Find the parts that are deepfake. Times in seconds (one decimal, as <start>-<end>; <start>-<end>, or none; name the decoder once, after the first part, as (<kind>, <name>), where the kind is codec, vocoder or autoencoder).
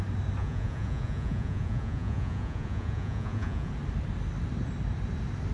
0.4-3.7 (vocoder, Vocos)